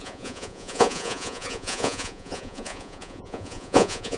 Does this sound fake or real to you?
fake